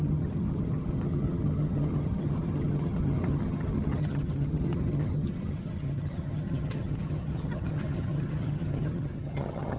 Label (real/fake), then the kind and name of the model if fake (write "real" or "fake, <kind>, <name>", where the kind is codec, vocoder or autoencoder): fake, vocoder, HiFi-GAN